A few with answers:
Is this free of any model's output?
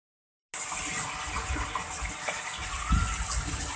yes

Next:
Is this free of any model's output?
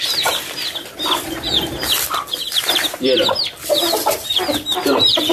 yes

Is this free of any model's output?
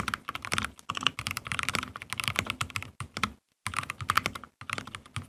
yes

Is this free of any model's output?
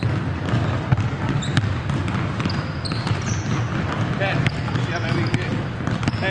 yes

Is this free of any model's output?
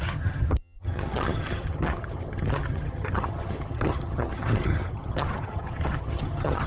no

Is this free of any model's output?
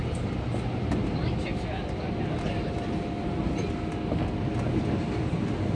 yes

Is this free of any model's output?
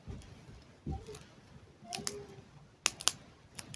yes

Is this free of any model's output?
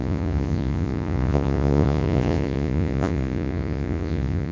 no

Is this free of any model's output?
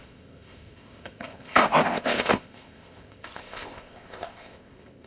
no